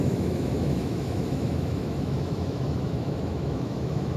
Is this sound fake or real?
fake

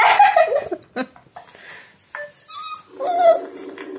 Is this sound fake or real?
real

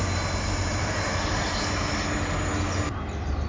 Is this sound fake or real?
real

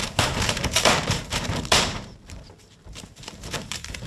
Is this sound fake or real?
fake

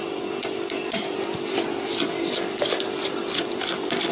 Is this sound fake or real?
real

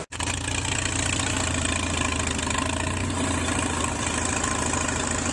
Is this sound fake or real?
real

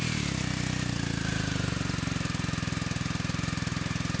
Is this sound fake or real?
real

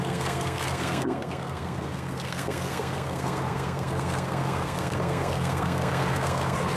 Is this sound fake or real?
fake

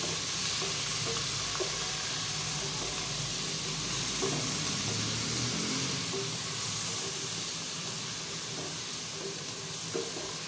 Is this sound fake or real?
real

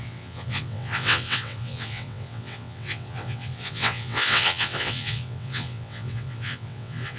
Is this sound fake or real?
fake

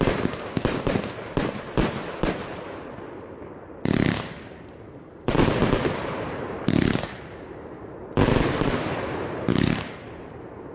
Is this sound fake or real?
fake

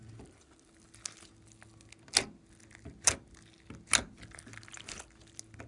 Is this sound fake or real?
real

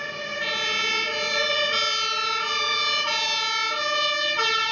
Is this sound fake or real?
real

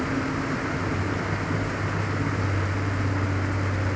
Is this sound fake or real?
real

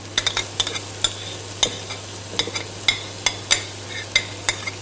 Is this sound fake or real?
real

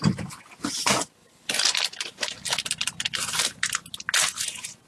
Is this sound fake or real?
real